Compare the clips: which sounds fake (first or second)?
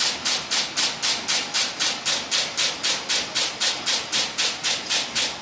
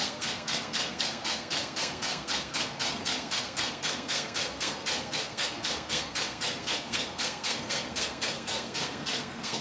second